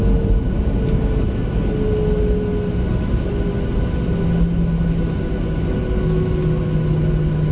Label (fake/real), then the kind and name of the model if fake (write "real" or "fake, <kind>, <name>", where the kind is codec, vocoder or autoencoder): real